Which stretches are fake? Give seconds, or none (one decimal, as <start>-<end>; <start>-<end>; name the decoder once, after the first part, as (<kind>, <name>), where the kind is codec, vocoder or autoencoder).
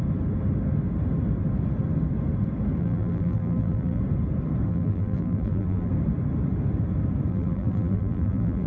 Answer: 2.8-4.0 (vocoder, BigVGAN v2); 4.7-5.9; 7.3-8.7